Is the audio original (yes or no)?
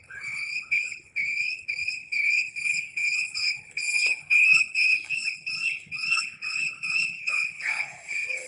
no